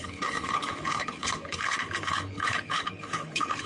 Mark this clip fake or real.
fake